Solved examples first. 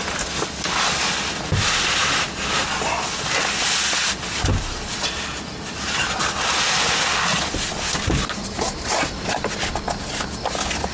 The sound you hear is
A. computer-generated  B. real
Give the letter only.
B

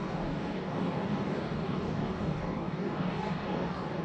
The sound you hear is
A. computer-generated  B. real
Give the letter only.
A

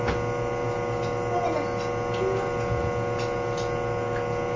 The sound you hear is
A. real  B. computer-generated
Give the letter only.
A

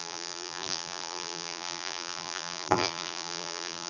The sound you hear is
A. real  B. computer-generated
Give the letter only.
B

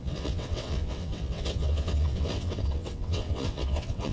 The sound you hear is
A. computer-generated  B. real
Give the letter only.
A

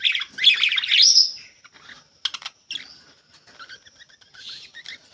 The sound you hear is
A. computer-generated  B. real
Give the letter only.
B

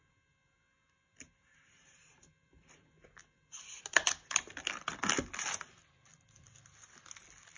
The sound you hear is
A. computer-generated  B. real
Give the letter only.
B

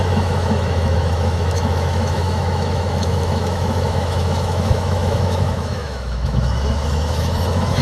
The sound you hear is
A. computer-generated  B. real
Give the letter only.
A